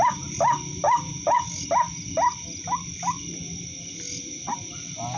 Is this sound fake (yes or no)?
no